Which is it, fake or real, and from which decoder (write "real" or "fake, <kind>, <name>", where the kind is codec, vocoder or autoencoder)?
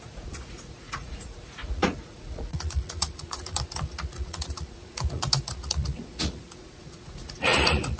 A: fake, vocoder, Vocos